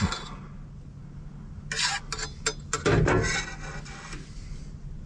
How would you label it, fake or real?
real